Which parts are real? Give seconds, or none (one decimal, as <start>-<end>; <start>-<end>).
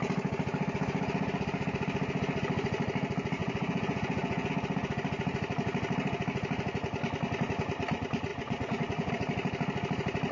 0.0-3.4; 4.5-8.3; 9.1-10.3